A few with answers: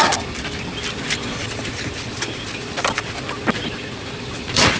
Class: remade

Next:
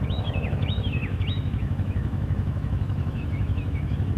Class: remade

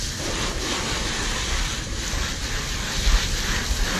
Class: recorded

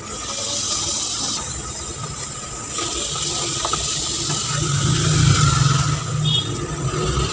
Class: recorded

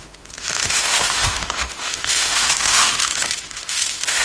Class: remade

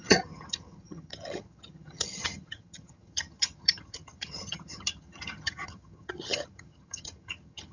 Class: remade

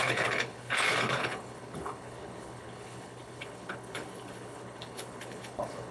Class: remade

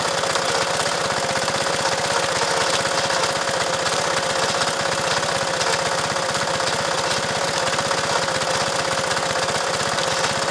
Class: recorded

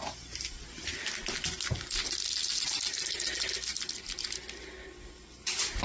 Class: recorded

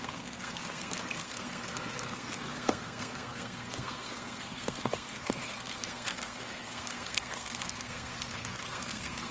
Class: remade